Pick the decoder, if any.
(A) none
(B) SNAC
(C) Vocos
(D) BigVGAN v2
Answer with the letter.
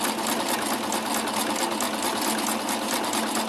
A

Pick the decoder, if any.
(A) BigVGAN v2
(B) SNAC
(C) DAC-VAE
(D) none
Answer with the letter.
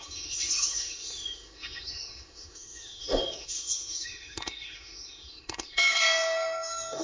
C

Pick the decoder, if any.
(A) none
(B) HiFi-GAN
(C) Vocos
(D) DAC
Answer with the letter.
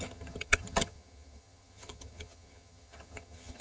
B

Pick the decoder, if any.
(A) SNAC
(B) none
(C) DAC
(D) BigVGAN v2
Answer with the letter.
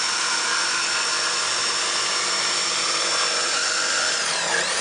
D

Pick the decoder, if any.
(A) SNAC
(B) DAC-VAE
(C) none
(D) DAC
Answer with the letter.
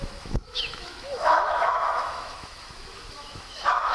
B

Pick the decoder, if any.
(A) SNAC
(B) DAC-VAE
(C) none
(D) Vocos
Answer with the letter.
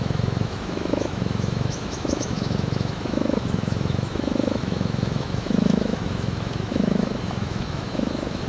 B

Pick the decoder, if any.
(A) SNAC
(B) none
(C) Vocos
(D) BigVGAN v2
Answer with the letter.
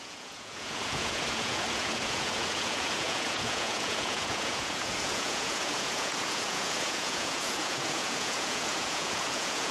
C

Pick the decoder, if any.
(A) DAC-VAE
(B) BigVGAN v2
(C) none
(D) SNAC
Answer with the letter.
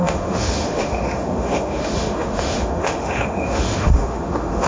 A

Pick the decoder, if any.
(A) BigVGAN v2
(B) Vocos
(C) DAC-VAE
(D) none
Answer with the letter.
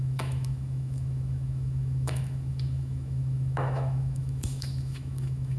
C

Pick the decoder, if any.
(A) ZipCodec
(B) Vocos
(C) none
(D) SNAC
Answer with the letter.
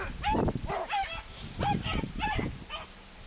C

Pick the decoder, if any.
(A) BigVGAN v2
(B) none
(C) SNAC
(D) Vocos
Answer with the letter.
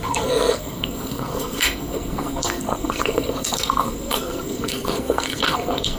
C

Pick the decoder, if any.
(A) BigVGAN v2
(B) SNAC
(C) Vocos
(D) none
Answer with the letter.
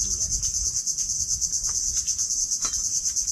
D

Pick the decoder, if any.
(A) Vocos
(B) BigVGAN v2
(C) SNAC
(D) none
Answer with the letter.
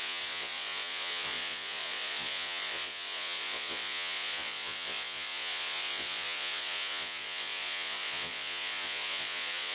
A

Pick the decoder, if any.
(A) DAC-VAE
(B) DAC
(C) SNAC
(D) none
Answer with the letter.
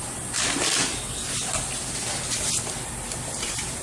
D